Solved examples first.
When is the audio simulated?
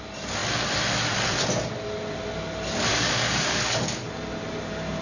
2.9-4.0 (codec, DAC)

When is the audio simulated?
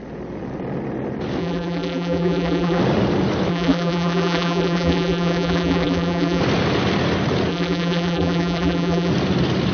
1.4-2.8 (vocoder, BigVGAN v2); 3.5-6.4; 7.5-9.1